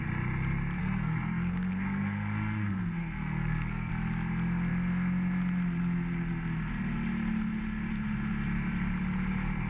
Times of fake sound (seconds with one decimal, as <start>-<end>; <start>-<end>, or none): 0.8-3.9